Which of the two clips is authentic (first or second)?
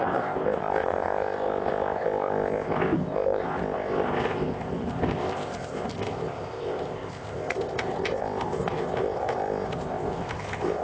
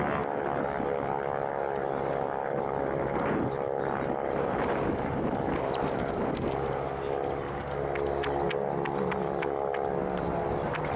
second